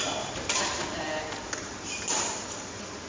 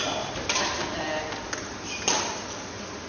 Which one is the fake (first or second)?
first